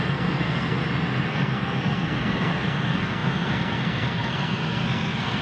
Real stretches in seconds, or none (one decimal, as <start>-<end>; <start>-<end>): 0.8-1.3